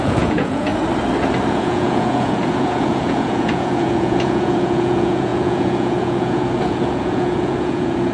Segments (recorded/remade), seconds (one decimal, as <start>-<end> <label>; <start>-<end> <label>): 0.0-0.7 remade; 0.7-1.5 recorded; 1.5-8.1 remade